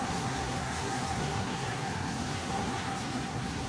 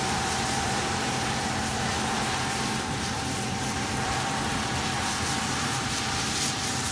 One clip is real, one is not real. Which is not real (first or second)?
first